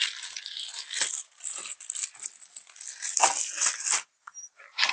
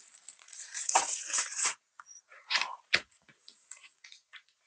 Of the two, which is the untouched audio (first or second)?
first